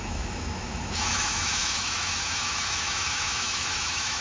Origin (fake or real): fake